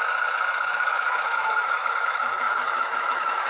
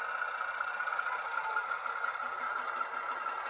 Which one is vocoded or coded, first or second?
first